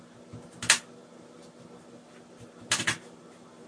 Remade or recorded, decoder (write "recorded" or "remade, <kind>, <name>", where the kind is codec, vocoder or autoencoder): recorded